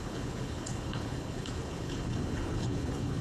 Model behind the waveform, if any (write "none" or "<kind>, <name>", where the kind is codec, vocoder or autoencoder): codec, HILCodec